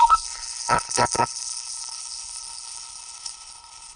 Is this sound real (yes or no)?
no